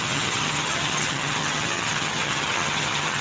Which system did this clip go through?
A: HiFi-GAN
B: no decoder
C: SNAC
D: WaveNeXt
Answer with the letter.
A